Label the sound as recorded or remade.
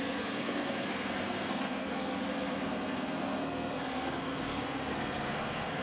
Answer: remade